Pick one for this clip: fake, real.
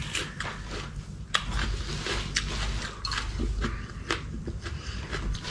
real